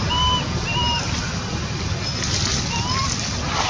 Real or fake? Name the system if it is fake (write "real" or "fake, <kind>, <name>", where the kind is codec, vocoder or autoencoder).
real